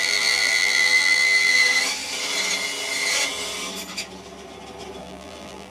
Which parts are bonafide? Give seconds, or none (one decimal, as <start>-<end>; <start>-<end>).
1.6-5.0